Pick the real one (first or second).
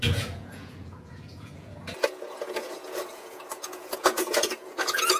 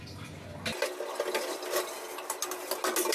second